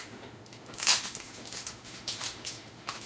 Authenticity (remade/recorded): remade